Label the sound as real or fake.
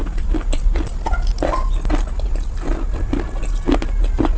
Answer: real